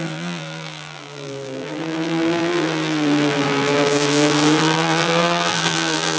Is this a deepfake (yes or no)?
yes